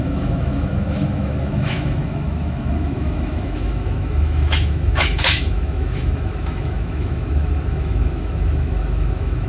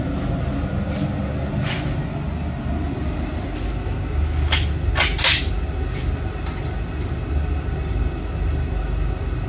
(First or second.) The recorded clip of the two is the second